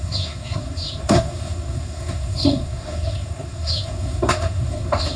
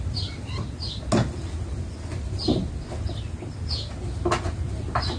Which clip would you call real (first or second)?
second